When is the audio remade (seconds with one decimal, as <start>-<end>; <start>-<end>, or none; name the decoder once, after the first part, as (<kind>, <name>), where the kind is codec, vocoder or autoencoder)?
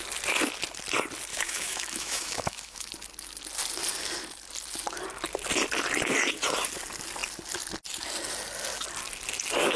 1.3-2.9 (autoencoder, DAC-VAE)